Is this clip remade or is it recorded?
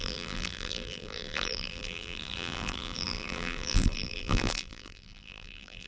remade